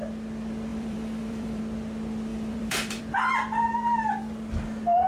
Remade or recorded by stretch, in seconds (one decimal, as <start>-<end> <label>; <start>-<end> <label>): 0.0-0.7 recorded; 0.7-1.6 remade; 1.6-2.3 recorded; 2.3-3.0 remade; 3.0-5.1 recorded